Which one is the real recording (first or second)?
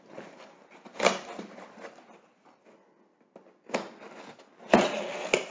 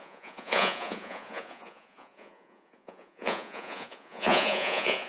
first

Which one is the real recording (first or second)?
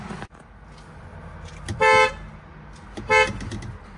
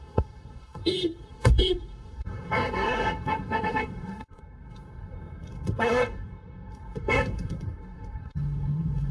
first